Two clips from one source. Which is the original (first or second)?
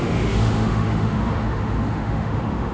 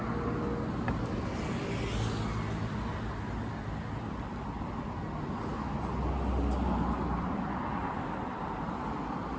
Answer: second